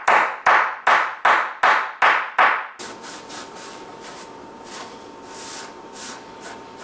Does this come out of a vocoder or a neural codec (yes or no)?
no